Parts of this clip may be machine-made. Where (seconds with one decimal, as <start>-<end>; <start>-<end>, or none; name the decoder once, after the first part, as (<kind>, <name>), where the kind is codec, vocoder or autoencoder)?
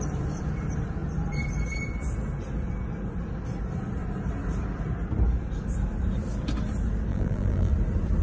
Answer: 7.1-7.7 (vocoder, BigVGAN v2)